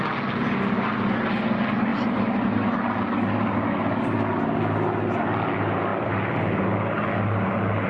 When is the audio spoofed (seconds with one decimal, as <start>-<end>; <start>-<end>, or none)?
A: none